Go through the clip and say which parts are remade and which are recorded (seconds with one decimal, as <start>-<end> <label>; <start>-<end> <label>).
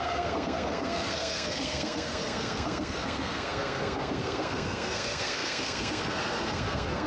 0.0-7.1 remade